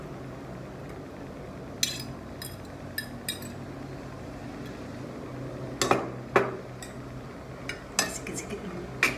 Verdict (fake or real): real